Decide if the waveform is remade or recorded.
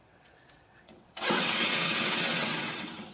remade